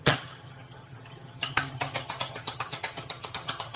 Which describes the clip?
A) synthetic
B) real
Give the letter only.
A